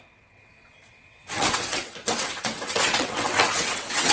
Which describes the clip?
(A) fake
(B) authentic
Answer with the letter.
A